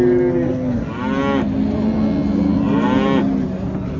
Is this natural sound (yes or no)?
yes